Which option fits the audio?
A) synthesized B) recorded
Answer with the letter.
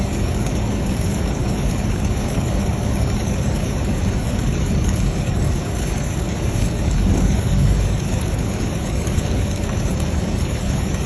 A